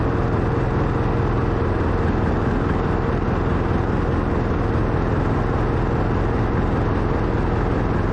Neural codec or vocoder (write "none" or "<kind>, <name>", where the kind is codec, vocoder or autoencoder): none